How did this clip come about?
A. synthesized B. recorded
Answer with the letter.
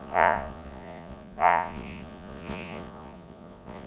A